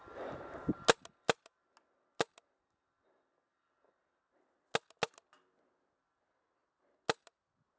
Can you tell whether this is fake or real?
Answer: real